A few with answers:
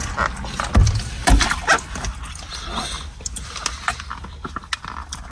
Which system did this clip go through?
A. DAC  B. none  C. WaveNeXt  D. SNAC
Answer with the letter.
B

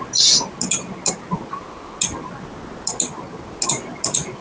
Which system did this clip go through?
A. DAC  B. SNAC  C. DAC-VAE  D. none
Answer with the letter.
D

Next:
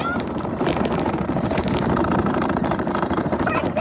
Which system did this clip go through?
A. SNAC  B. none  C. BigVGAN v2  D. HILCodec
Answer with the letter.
C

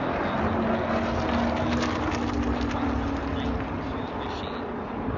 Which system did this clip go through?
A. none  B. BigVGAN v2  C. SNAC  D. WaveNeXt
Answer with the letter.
A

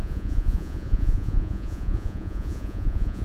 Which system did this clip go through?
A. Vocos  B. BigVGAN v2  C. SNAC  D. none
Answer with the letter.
A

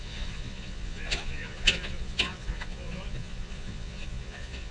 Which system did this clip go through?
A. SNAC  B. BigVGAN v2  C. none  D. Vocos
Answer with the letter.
D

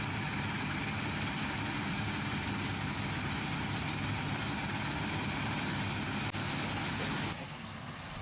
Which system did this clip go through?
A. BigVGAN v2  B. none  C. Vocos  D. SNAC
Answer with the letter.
B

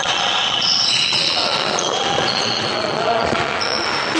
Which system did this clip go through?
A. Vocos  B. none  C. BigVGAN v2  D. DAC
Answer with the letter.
A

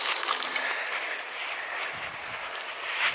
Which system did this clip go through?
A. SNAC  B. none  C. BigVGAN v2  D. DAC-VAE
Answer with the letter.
B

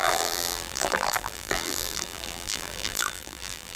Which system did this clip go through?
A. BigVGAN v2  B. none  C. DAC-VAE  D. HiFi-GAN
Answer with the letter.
A